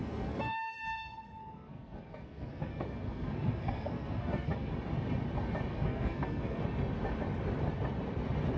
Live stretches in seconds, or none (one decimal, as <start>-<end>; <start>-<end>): 4.7-5.7; 6.6-8.6